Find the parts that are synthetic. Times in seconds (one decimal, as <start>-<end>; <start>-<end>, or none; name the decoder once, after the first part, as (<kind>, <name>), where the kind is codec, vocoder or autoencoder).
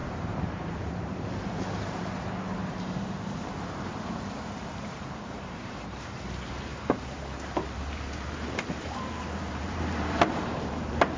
0.0-11.2 (vocoder, BigVGAN v2)